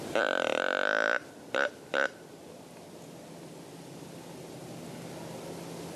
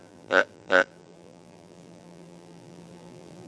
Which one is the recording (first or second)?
first